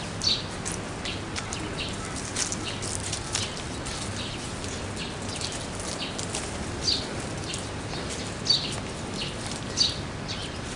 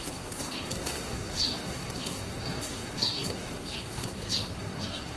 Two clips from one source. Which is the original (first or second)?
first